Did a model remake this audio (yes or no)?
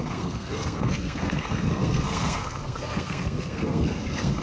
yes